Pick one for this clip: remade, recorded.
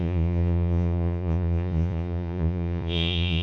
remade